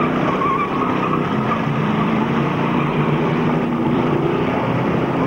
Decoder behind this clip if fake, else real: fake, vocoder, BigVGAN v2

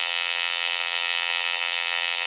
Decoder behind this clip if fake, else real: fake, vocoder, BigVGAN v2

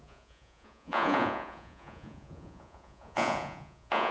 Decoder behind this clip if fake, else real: fake, vocoder, Vocos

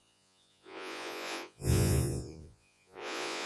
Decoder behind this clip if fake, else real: fake, vocoder, Vocos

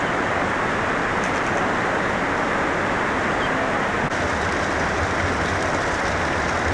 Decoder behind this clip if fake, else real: real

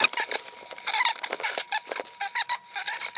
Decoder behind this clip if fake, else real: real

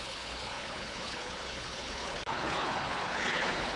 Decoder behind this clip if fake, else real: fake, codec, HILCodec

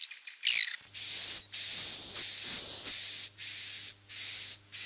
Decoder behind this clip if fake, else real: real